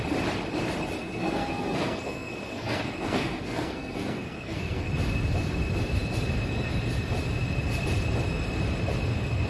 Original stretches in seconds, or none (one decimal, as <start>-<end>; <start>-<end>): 0.0-1.0; 4.9-9.5